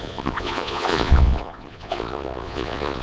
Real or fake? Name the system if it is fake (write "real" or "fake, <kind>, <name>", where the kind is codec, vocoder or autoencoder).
fake, vocoder, Vocos